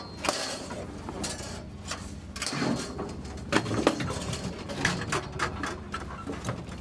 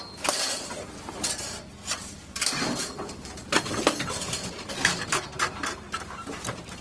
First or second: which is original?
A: first